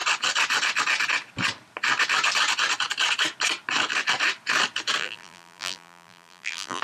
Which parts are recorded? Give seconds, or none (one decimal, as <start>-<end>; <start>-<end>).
0.0-5.0